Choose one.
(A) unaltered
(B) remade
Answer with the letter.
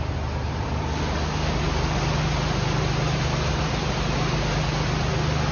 A